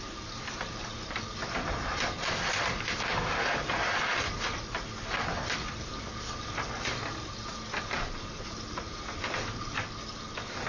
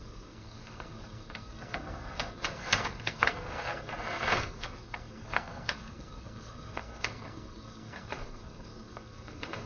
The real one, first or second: first